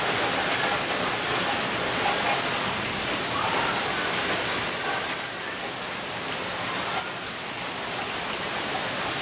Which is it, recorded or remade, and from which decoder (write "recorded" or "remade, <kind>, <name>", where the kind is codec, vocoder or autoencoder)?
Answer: recorded